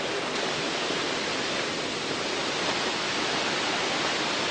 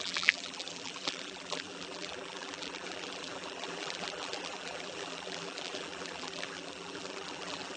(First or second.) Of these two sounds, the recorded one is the first